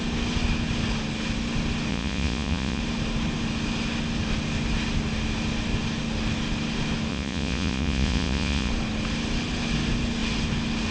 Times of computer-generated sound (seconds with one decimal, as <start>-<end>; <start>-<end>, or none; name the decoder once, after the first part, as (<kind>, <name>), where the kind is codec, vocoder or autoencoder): 1.9-2.8 (vocoder, Vocos); 7.1-8.7